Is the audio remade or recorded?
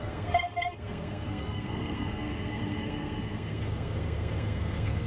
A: remade